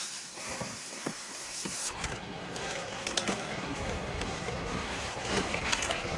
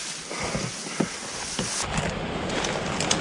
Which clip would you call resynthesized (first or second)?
first